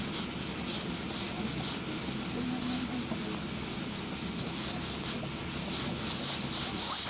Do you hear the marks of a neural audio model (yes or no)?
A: no